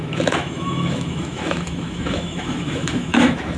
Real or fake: fake